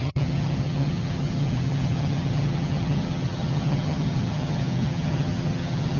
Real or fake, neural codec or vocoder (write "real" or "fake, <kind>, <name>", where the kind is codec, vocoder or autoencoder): fake, vocoder, HiFi-GAN